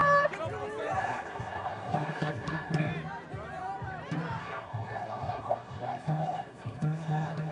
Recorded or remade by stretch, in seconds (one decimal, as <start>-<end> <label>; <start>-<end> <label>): 0.0-1.0 recorded; 1.0-2.9 remade; 2.9-4.4 recorded; 4.4-7.5 remade

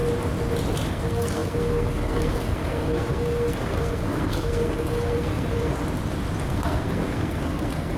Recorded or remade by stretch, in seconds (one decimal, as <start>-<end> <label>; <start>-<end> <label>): 0.0-0.9 recorded; 0.9-5.7 remade; 5.7-6.4 recorded; 6.4-8.0 remade

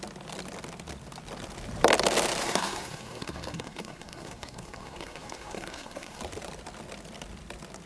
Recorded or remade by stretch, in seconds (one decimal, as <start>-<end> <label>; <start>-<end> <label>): 0.0-2.4 recorded; 2.4-6.2 remade; 6.2-7.9 recorded

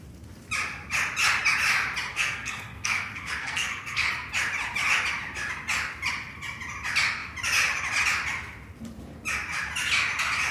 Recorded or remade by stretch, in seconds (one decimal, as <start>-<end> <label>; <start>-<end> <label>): 0.0-2.1 recorded; 2.1-4.1 remade; 4.1-10.5 recorded

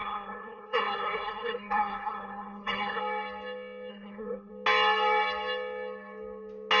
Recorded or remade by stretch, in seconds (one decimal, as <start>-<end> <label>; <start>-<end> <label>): 0.0-3.0 remade; 3.0-3.9 recorded; 3.9-4.5 remade; 4.5-6.8 recorded